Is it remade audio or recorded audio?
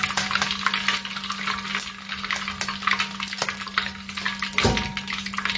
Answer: recorded